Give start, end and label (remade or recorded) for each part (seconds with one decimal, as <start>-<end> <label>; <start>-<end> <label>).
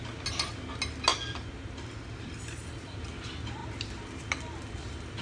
0.0-5.2 recorded